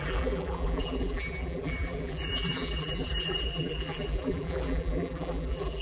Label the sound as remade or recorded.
remade